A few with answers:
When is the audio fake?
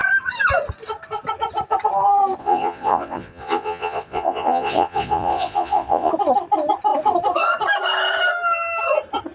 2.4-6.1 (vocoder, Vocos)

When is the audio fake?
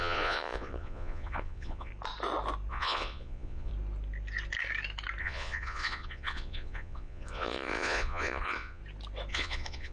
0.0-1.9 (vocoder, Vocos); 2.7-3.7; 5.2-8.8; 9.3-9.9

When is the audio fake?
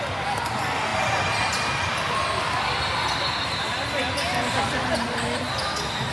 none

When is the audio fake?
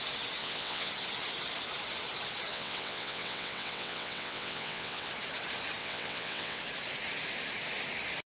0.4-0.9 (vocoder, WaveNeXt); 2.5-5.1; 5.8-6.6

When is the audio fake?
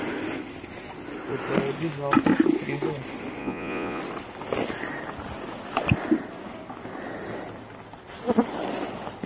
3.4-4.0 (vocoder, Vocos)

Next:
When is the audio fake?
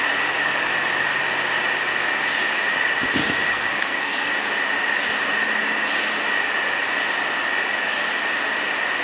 3.5-4.3 (codec, SNAC)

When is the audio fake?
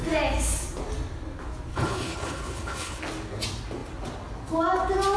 1.7-3.0 (codec, HILCodec)